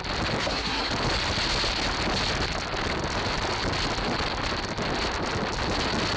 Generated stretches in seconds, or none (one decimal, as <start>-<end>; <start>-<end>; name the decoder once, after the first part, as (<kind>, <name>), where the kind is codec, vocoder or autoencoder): 0.4-0.9 (codec, SNAC)

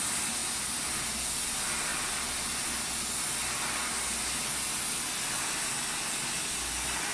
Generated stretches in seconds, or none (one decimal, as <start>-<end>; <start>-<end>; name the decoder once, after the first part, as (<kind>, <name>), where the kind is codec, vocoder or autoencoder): none

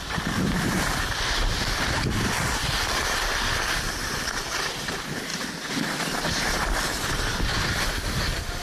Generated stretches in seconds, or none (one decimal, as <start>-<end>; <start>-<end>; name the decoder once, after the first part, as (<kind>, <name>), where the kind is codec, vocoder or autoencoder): none

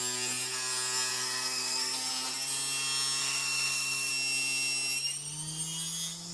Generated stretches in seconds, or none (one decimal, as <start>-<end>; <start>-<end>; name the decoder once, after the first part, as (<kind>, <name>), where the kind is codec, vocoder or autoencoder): 1.1-2.1 (codec, SNAC); 3.2-4.1

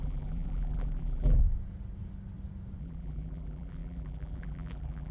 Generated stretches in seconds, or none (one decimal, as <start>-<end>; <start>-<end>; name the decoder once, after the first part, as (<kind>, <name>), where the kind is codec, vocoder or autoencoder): 0.0-1.4 (vocoder, BigVGAN v2); 2.8-5.1

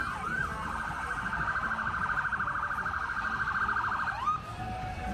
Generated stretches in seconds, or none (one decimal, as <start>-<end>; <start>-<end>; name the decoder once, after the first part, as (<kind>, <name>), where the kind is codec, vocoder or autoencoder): none

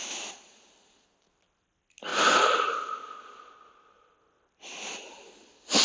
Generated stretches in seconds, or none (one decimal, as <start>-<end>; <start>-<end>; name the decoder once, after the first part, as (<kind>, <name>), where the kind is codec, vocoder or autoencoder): none